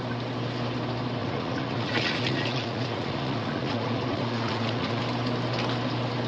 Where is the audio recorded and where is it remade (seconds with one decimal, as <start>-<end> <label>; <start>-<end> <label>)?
0.0-1.2 recorded; 1.2-5.0 remade; 5.0-6.3 recorded